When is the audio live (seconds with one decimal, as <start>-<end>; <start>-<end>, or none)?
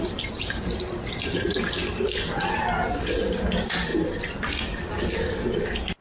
0.0-6.0